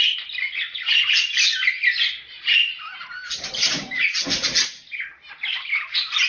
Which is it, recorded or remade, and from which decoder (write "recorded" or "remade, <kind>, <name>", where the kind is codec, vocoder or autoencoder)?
recorded